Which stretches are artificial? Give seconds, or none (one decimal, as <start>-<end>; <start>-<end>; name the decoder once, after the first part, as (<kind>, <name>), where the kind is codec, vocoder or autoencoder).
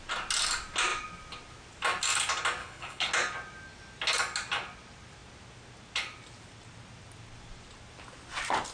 2.6-3.1 (codec, HILCodec)